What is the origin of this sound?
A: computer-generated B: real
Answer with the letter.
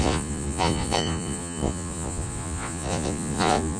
A